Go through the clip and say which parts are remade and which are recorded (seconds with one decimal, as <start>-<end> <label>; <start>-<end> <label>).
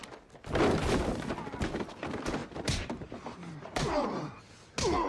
0.0-2.4 recorded; 2.4-4.4 remade; 4.4-5.1 recorded